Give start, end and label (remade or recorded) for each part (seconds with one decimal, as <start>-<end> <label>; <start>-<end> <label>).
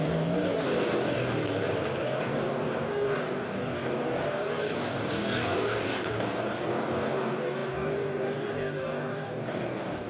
0.0-1.4 remade; 1.4-2.0 recorded; 2.0-10.1 remade